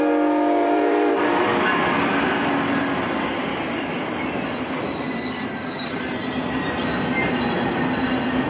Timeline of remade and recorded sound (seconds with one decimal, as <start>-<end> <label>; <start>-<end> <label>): 0.0-0.6 recorded; 0.6-1.8 remade; 1.8-3.5 recorded; 3.5-6.1 remade; 6.1-8.5 recorded

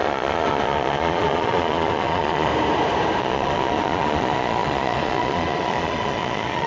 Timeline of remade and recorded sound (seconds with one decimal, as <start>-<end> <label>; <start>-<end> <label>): 0.0-2.5 remade; 2.5-3.2 recorded; 3.2-6.7 remade